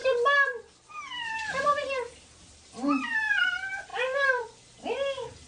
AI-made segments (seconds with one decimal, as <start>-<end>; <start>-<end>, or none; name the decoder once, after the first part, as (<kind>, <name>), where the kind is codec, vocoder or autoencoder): 3.9-4.4 (vocoder, BigVGAN v2)